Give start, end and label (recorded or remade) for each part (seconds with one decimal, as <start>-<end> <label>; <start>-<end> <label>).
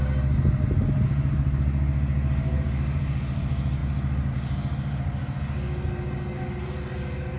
0.0-7.4 recorded